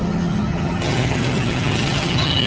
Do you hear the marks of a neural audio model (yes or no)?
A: yes